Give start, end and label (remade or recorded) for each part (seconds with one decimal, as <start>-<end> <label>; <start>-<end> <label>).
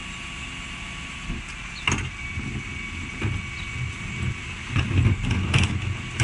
0.0-6.2 recorded